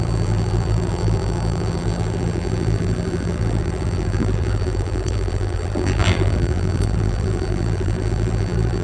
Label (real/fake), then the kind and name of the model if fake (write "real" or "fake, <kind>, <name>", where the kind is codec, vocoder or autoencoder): fake, vocoder, BigVGAN v2